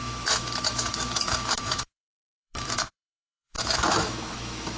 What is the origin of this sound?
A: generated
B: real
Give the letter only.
A